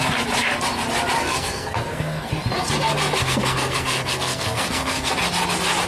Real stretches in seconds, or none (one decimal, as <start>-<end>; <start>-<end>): 0.0-1.2; 2.3-3.2; 5.1-5.9